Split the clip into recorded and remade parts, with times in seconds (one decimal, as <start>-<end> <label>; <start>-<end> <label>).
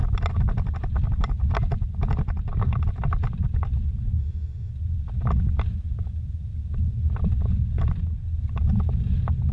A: 0.0-4.2 recorded; 4.2-4.7 remade; 4.7-9.5 recorded